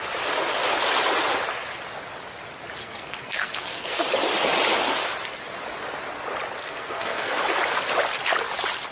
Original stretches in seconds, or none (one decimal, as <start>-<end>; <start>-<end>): 0.0-2.8; 4.0-6.6; 7.4-8.9